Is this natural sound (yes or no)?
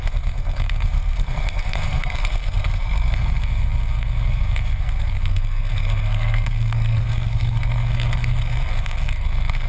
no